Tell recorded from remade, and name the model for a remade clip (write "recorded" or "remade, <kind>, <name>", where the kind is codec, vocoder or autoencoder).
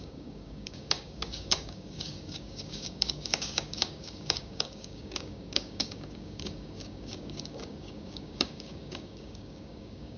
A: remade, codec, DAC